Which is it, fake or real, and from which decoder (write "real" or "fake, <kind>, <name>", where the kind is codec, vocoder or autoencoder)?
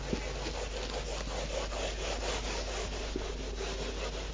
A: real